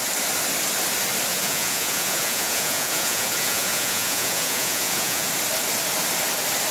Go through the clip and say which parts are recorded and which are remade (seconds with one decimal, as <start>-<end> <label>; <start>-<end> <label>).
0.0-1.3 recorded; 1.3-5.3 remade; 5.3-6.7 recorded